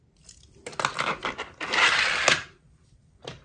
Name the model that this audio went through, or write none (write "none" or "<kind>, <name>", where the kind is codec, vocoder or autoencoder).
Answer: none